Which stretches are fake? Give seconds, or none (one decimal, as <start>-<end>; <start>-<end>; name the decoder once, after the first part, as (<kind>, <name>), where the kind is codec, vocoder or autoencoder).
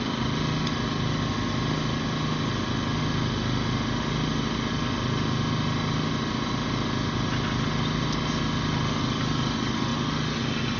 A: none